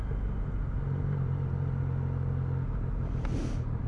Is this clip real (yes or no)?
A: yes